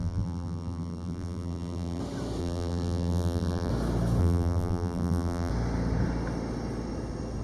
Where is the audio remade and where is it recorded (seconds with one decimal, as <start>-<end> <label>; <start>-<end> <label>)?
0.0-2.0 remade; 2.0-2.4 recorded; 2.4-3.7 remade; 3.7-4.2 recorded; 4.2-5.5 remade; 5.5-7.4 recorded